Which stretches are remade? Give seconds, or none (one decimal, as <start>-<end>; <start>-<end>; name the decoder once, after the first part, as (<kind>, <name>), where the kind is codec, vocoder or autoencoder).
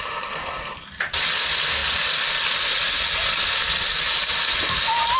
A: none